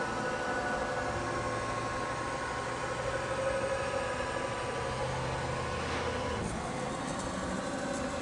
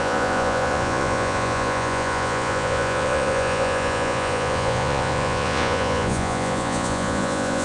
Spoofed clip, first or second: second